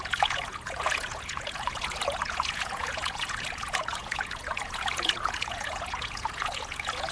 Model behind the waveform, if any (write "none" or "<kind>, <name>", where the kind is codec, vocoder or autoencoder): vocoder, Vocos